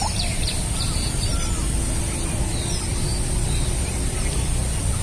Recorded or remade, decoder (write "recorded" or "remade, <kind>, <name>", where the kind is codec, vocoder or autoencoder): recorded